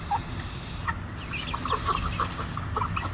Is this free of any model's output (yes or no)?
yes